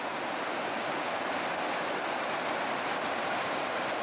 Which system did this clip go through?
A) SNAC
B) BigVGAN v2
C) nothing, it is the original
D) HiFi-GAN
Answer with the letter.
C